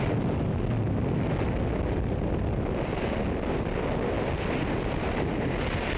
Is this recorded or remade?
recorded